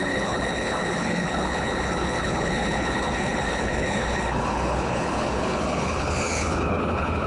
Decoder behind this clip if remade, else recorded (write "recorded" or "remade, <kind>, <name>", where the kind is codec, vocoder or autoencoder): remade, codec, HILCodec